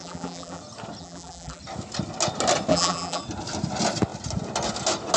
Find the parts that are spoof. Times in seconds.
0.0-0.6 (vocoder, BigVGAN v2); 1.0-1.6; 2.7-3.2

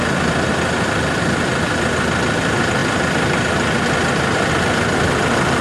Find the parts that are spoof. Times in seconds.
none

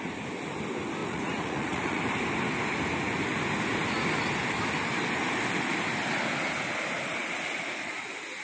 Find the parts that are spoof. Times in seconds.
1.0-2.0 (vocoder, Vocos); 7.2-7.9

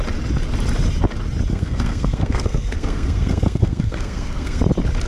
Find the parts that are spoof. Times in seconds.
1.5-4.6 (codec, SNAC)